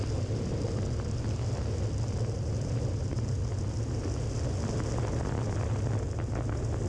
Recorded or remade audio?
recorded